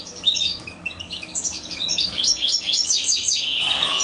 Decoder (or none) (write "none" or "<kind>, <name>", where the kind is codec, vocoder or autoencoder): codec, DAC